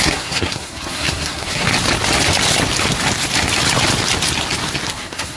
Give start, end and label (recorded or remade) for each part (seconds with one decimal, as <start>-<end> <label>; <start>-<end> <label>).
0.0-1.7 remade; 1.7-4.9 recorded; 4.9-5.4 remade